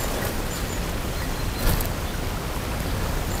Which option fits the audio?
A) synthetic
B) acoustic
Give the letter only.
B